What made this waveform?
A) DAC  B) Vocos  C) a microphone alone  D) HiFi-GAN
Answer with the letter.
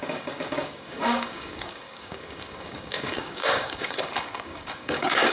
A